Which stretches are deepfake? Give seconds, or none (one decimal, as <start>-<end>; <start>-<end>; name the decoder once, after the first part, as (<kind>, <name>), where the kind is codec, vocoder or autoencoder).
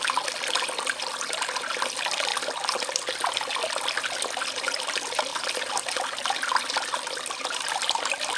none